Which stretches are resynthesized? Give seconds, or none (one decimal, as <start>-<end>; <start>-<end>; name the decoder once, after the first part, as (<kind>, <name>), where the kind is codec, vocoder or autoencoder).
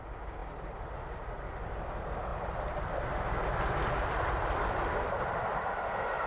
0.4-0.9 (vocoder, BigVGAN v2); 2.3-6.3